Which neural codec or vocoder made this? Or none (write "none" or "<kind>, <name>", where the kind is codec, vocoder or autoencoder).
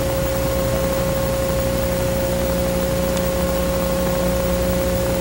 none